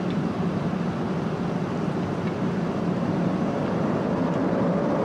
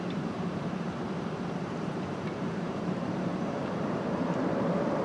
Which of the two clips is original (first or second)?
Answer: first